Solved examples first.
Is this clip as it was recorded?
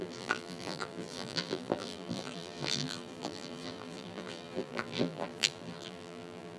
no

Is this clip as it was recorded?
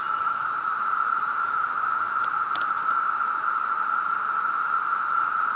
no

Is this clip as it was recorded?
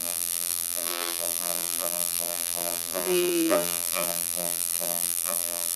no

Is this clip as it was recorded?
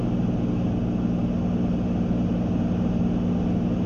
yes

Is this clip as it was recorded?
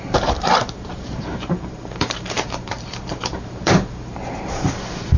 no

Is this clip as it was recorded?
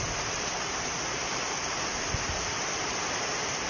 no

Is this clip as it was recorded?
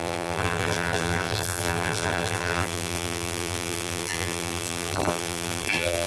no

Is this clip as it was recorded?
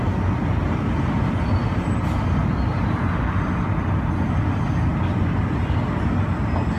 yes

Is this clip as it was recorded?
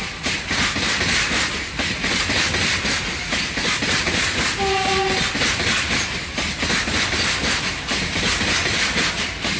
yes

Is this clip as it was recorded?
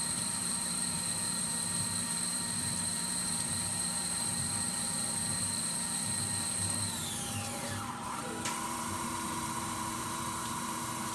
no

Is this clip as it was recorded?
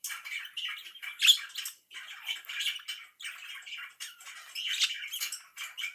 yes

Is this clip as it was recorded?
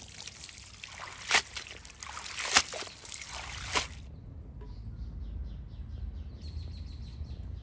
yes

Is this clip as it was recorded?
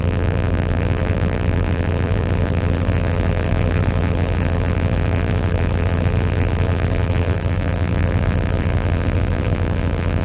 no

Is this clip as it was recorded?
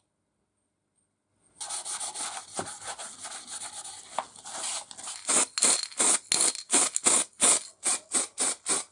yes